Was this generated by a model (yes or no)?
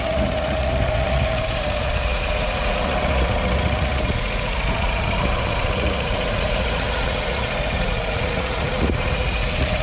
yes